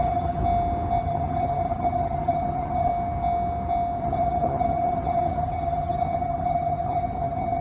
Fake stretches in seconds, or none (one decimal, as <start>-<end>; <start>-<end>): 0.0-0.4; 1.0-2.9; 4.0-7.6